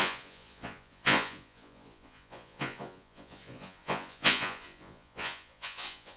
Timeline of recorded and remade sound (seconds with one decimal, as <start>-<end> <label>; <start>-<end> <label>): 0.0-6.2 remade